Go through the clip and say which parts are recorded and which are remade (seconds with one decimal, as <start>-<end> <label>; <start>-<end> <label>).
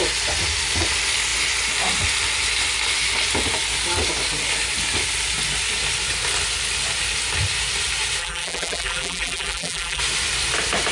0.0-8.2 recorded; 8.2-10.0 remade; 10.0-10.9 recorded